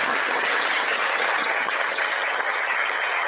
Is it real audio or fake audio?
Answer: fake